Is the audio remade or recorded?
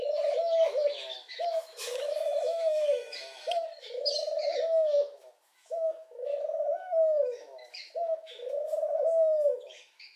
remade